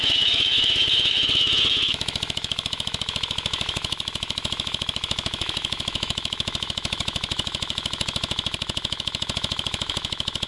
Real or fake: fake